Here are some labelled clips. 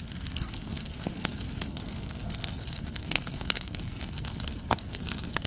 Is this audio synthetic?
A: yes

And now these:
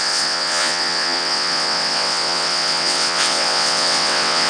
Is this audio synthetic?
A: yes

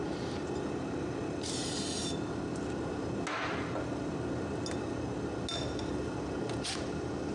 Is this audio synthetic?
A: no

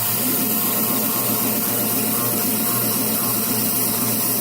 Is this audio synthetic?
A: no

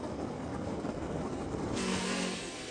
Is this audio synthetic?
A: yes